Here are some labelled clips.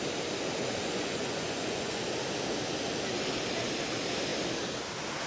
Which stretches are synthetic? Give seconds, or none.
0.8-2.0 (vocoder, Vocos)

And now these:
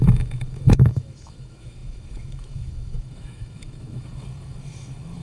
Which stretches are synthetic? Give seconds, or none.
0.0-5.2 (autoencoder, DAC-VAE)

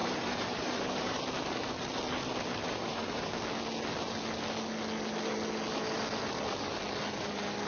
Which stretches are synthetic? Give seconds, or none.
0.0-1.2 (vocoder, BigVGAN v2); 2.6-3.3